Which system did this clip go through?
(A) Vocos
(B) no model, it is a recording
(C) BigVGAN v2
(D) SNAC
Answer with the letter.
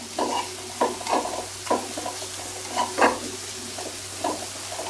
B